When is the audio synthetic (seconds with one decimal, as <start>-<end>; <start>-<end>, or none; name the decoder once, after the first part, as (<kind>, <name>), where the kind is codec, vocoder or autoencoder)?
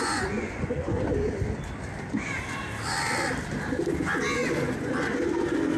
0.0-1.0 (vocoder, Vocos); 4.4-4.9